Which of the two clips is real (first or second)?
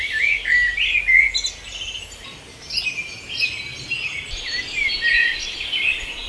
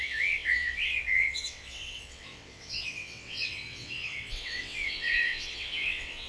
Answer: first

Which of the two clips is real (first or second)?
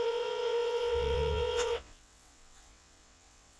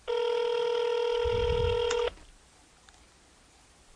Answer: second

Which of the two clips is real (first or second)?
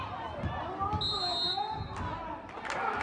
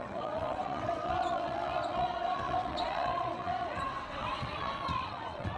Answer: first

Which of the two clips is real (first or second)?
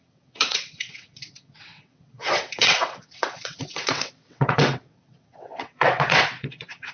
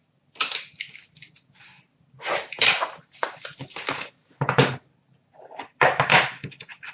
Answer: second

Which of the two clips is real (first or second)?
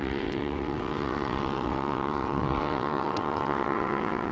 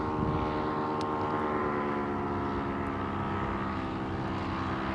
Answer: second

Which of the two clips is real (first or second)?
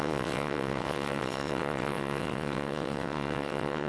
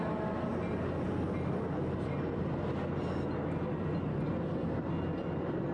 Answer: second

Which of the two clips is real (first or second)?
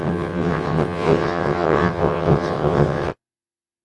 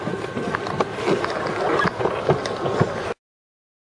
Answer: second